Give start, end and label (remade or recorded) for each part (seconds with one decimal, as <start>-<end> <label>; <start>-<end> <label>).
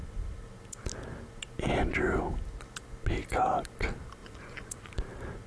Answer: 0.0-4.2 recorded; 4.2-4.9 remade; 4.9-5.5 recorded